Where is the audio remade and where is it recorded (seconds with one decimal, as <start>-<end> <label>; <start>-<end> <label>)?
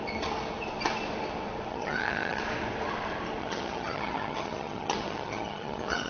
0.0-1.7 recorded; 1.7-2.4 remade; 2.4-3.4 recorded; 3.4-6.1 remade